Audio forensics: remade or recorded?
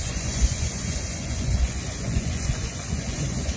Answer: remade